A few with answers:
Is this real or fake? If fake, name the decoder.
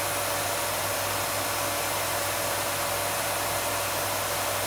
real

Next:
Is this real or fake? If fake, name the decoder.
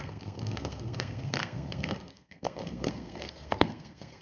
fake, codec, SNAC